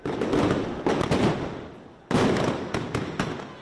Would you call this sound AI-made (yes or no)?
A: no